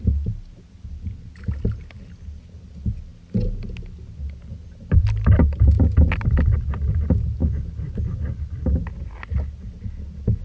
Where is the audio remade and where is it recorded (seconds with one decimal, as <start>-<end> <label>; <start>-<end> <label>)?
0.0-10.4 recorded